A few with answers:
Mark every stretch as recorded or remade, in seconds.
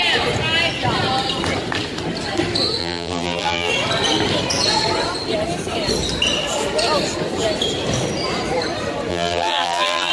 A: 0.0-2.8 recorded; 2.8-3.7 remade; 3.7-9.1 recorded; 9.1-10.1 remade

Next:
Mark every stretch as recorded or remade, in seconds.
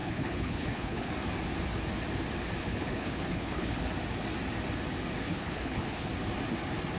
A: 0.0-1.1 remade; 1.1-2.6 recorded; 2.6-3.8 remade; 3.8-5.2 recorded; 5.2-6.1 remade; 6.1-7.0 recorded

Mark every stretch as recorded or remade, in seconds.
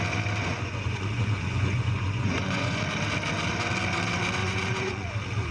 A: 0.0-0.4 recorded; 0.4-2.8 remade; 2.8-4.4 recorded; 4.4-5.1 remade; 5.1-5.5 recorded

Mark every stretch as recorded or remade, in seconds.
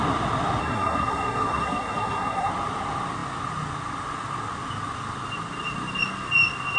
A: 0.0-0.6 recorded; 0.6-2.5 remade; 2.5-6.8 recorded